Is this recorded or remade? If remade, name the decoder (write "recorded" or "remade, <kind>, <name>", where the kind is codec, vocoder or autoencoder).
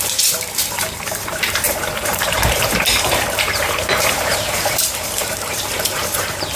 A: remade, vocoder, BigVGAN v2